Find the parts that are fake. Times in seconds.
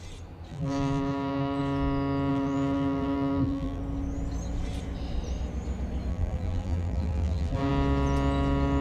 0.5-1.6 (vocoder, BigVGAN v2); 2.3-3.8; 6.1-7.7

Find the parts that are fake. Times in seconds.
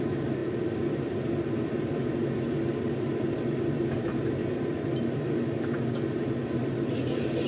none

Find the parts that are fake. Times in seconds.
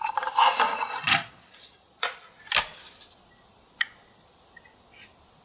1.1-2.4 (vocoder, Vocos)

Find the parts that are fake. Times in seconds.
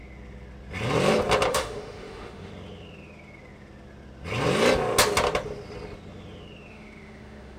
1.5-2.5 (autoencoder, DAC-VAE); 6.7-7.6